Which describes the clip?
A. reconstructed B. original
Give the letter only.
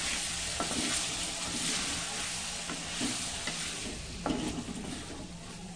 B